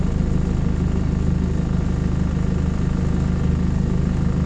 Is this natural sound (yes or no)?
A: yes